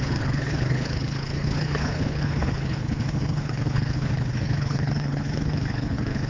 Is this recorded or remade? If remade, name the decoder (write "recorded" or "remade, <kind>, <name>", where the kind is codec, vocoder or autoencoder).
remade, codec, HILCodec